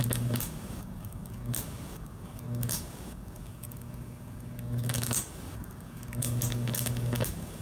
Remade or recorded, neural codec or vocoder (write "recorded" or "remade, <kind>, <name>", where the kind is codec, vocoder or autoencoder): remade, codec, DAC